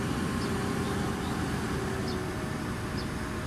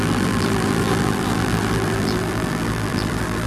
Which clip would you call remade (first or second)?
second